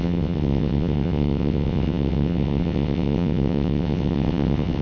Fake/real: fake